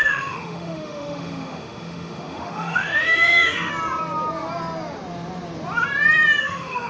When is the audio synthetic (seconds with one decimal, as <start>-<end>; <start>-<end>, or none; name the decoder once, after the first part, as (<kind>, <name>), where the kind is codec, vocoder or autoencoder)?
0.0-3.7 (autoencoder, DAC-VAE); 6.4-6.9